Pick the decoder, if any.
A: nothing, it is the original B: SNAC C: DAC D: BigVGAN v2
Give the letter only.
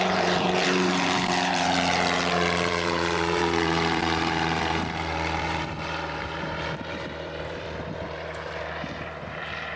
D